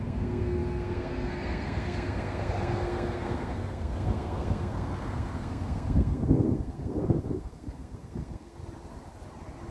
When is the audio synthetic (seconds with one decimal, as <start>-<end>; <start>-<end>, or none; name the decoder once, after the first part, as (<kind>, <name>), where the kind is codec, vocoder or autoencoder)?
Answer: 0.0-8.6 (codec, SNAC)

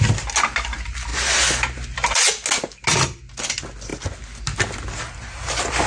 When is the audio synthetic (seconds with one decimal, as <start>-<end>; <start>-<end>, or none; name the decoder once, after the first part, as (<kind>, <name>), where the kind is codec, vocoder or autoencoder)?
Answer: none

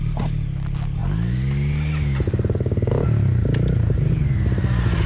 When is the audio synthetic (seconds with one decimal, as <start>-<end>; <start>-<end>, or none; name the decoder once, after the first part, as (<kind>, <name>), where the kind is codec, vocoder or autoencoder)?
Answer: none

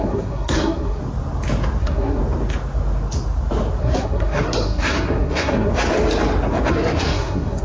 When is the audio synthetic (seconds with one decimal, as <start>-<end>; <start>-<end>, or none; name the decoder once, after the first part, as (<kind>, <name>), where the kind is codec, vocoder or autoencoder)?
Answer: 0.0-1.0 (codec, SNAC); 1.8-2.2; 3.8-5.7; 6.7-7.6

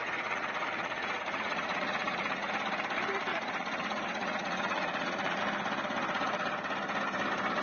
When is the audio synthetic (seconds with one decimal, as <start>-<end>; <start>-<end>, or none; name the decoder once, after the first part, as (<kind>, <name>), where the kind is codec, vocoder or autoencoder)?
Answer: 0.0-2.5 (vocoder, Vocos); 3.3-5.4

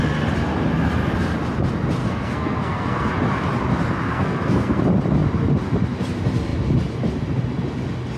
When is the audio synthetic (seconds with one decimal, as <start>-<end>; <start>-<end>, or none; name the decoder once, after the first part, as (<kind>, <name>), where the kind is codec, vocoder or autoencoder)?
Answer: 2.0-3.1 (codec, SNAC); 4.1-4.8